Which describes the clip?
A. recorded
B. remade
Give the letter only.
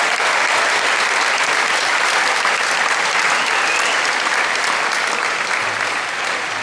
A